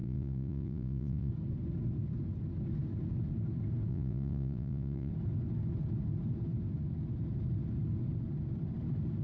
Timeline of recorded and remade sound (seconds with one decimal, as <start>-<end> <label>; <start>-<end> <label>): 0.0-1.3 remade; 1.3-3.9 recorded; 3.9-5.1 remade; 5.1-9.2 recorded